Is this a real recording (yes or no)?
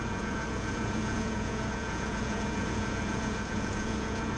no